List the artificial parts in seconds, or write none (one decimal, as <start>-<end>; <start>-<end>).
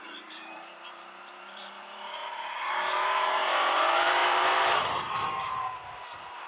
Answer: 0.0-6.5